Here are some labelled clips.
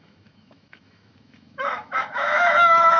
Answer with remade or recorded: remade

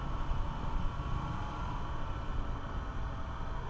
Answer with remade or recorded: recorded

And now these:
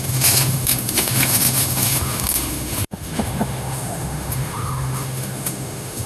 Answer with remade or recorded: remade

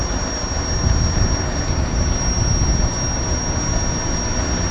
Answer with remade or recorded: recorded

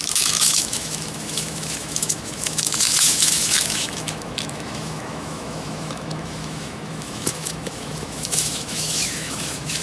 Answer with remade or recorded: remade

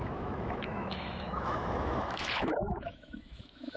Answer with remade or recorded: remade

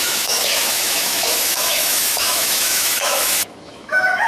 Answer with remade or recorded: remade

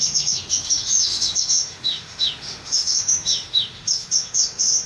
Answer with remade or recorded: remade